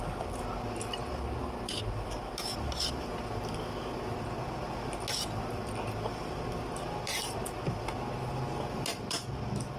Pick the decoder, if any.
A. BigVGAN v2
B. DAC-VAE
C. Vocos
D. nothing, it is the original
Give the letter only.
D